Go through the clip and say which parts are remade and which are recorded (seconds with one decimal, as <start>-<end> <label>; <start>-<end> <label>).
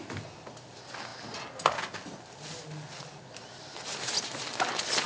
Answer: 0.0-5.1 recorded